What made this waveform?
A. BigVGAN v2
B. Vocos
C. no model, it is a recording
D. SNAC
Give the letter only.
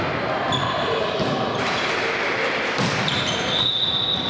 C